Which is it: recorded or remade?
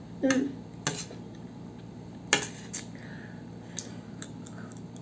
recorded